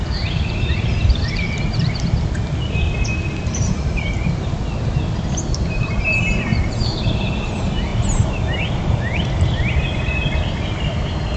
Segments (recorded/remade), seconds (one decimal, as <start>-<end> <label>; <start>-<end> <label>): 0.0-11.4 recorded